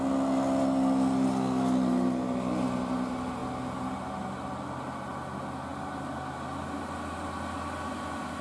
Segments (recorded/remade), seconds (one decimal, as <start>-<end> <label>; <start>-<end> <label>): 0.0-8.4 recorded